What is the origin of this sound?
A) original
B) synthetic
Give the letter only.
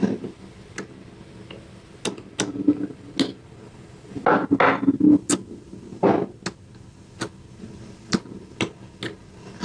A